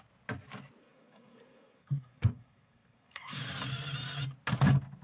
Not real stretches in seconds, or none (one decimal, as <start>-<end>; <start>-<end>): 0.8-3.4